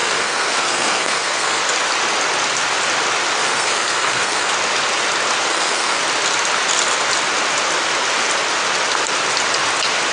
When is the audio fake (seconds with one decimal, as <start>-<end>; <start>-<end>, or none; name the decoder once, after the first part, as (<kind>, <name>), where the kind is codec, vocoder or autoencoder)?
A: 0.0-1.6 (codec, SNAC); 3.4-4.5; 5.5-6.0